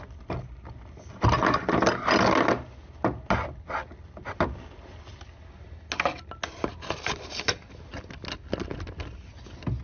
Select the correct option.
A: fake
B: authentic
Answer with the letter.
B